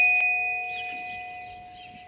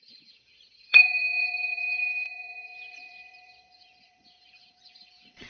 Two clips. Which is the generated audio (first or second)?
second